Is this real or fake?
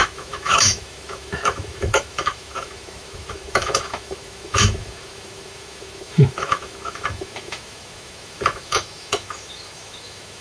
fake